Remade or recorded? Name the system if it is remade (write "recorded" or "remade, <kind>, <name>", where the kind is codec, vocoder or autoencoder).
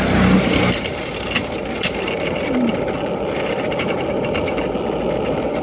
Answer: recorded